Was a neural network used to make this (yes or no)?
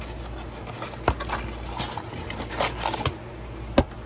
no